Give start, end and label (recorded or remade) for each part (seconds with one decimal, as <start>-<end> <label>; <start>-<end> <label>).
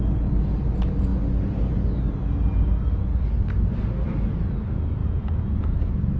0.0-5.0 recorded; 5.0-5.8 remade; 5.8-6.2 recorded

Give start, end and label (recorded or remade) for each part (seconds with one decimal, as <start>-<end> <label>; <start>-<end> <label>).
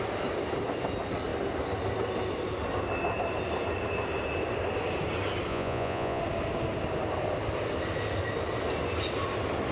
0.0-5.5 recorded; 5.5-6.2 remade; 6.2-9.7 recorded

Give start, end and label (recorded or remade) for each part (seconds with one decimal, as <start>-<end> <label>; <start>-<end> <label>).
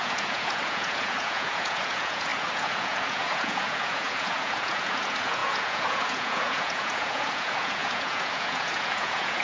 0.0-9.4 remade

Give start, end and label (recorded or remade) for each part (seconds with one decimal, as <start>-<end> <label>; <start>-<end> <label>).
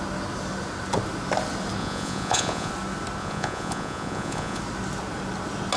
0.0-1.8 recorded; 1.8-2.7 remade; 2.7-3.2 recorded; 3.2-4.6 remade; 4.6-5.8 recorded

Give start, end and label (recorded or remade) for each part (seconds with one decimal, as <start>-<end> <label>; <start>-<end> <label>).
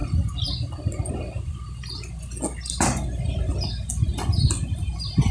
0.0-5.3 recorded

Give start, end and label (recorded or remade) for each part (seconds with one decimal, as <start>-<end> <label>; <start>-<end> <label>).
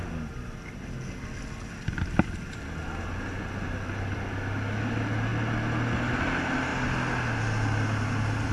0.0-8.5 recorded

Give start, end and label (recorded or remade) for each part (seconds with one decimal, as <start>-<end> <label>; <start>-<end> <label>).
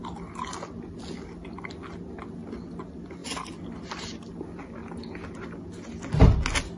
0.0-6.8 recorded